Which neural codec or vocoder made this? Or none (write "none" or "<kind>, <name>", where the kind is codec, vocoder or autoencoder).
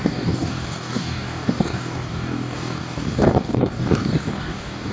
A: codec, DAC